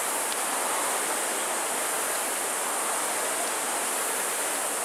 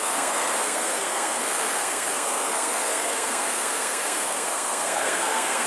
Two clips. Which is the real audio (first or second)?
first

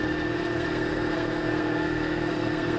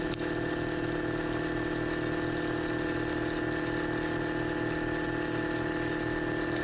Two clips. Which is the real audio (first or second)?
second